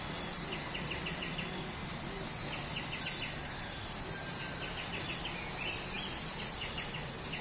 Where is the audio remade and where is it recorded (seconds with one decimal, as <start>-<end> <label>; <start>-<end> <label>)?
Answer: 0.0-7.4 recorded